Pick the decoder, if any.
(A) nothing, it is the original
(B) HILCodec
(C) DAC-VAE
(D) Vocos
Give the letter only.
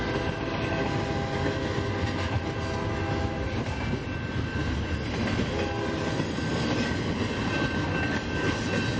A